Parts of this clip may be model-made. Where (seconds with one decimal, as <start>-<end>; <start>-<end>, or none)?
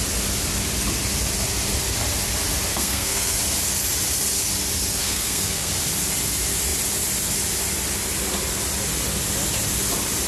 2.7-3.4; 4.9-5.7